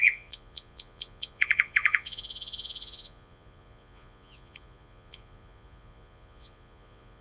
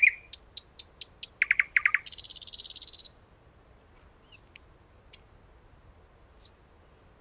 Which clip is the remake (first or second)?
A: first